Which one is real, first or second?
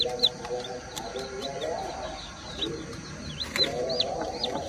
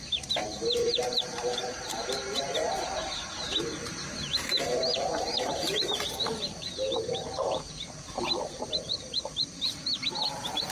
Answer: first